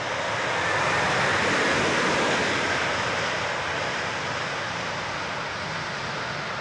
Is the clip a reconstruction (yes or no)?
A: no